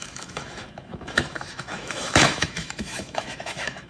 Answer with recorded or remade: remade